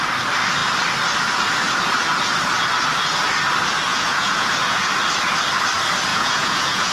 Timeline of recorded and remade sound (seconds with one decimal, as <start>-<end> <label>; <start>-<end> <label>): 0.0-3.9 recorded; 3.9-4.9 remade; 4.9-6.1 recorded; 6.1-6.9 remade